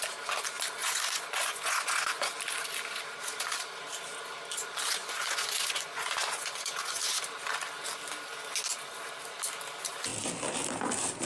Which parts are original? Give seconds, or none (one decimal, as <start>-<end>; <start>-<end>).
0.0-0.8; 2.3-5.0; 7.0-11.2

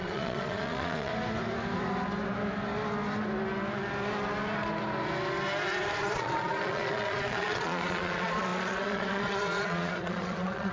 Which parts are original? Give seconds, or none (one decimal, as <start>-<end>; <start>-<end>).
1.1-6.0

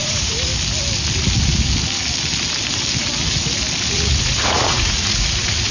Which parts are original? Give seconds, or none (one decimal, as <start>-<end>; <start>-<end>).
0.5-3.9